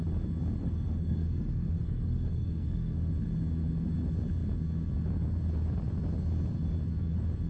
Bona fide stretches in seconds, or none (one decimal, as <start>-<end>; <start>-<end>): 0.0-0.6; 3.1-7.5